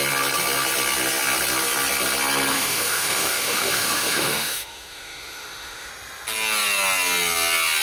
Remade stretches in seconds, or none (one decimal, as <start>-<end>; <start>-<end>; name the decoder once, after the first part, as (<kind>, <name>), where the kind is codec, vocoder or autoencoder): 2.5-5.9 (autoencoder, DAC-VAE)